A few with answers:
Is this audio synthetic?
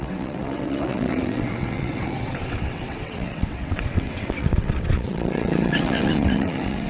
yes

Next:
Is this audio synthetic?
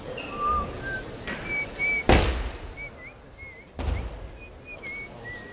no